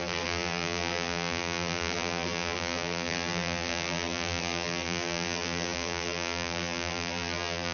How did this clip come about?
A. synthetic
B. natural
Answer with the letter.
A